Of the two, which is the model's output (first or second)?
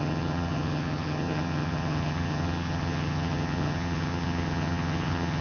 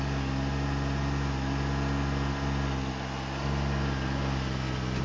first